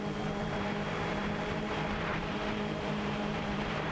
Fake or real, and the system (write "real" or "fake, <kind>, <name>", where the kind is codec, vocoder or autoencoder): fake, vocoder, BigVGAN v2